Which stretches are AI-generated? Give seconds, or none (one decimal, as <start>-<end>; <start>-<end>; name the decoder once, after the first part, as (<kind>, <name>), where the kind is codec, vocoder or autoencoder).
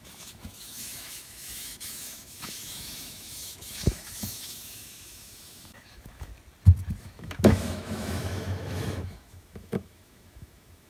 0.0-6.3 (autoencoder, DAC-VAE); 7.0-10.9